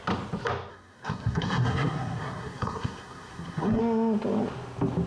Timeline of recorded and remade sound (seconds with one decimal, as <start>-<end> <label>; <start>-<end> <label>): 0.0-0.7 recorded; 0.7-3.8 remade; 3.8-5.1 recorded